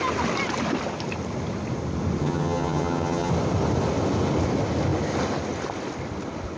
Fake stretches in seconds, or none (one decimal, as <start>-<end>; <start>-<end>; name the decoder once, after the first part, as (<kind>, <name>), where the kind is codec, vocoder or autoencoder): 2.2-3.3 (vocoder, HiFi-GAN)

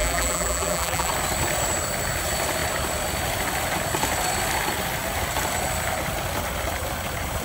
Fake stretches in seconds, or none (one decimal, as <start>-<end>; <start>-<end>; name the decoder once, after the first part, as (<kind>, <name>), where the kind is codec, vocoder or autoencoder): 0.0-1.1 (vocoder, BigVGAN v2)

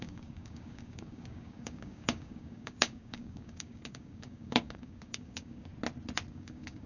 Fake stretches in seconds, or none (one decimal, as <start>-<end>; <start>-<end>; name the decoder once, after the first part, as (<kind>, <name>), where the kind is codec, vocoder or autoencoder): 0.0-5.7 (codec, DAC); 6.3-6.9

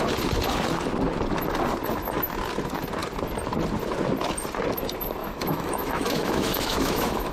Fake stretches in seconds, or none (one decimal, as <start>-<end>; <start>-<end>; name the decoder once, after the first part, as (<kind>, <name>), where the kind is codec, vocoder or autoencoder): 5.2-7.3 (autoencoder, DAC-VAE)